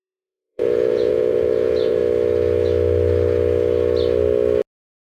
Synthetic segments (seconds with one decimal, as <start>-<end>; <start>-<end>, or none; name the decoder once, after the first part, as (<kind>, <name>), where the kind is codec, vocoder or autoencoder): 0.0-2.0 (vocoder, Vocos)